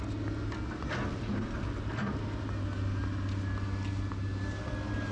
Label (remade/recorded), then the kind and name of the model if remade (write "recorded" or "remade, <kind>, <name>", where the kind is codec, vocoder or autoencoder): recorded